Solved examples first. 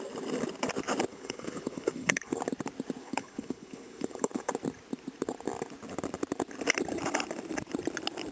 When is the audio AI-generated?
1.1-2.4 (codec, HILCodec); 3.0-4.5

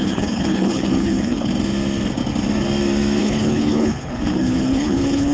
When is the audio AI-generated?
0.0-1.5 (codec, HILCodec); 3.2-5.3

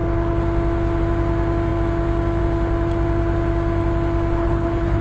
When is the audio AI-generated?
4.4-5.0 (codec, HILCodec)

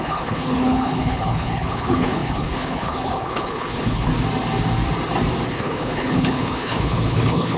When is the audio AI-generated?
0.0-4.1 (codec, HILCodec); 5.5-7.6

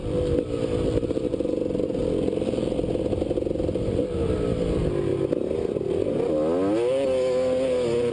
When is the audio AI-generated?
none

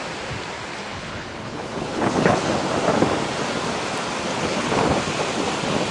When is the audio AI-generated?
0.9-2.5 (codec, HILCodec); 4.3-4.8

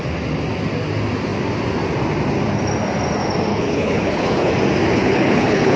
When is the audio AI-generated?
3.5-4.5 (codec, HILCodec); 4.9-5.8

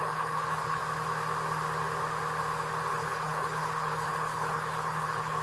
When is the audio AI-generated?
0.0-0.8 (codec, HILCodec); 2.9-5.4